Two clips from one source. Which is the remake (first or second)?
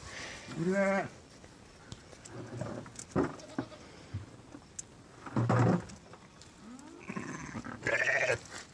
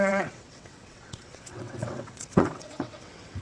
second